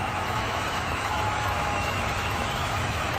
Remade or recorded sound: remade